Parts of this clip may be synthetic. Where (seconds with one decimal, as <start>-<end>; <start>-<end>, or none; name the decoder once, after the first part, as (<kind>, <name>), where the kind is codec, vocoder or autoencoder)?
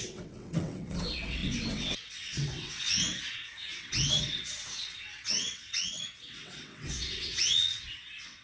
0.0-8.4 (vocoder, WaveNeXt)